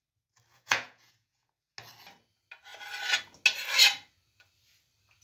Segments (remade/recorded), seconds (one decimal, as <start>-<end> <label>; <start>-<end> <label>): 0.0-0.5 recorded; 0.5-1.5 remade; 1.5-5.2 recorded